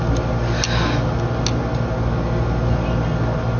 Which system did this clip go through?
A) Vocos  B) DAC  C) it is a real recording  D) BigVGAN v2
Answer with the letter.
C